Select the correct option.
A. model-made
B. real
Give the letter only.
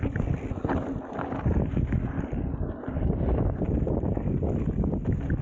B